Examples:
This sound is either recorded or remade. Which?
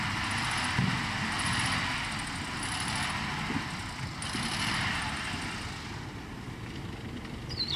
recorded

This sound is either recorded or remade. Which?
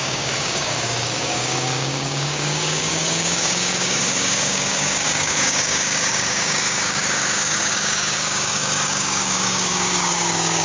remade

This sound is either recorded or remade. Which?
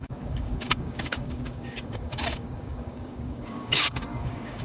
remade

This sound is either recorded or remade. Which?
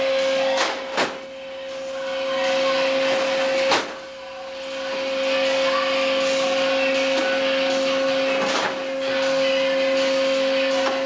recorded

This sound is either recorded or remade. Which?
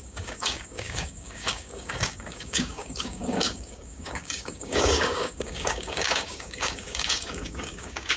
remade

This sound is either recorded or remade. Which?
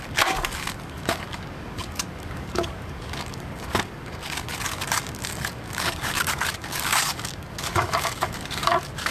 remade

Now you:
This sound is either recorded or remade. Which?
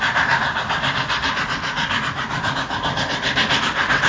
recorded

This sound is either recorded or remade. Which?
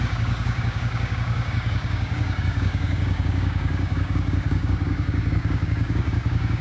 remade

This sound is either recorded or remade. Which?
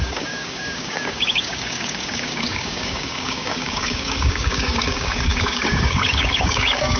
remade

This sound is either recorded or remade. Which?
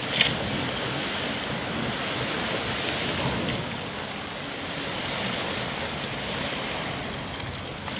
recorded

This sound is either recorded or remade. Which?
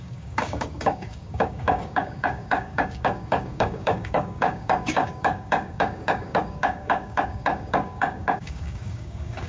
remade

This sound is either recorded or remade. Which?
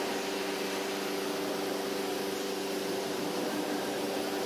recorded